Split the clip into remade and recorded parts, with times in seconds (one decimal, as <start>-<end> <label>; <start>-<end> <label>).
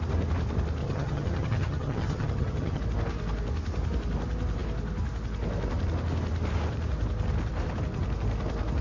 0.0-0.8 recorded; 0.8-2.8 remade; 2.8-8.8 recorded